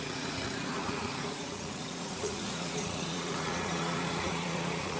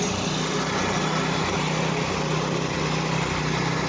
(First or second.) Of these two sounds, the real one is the second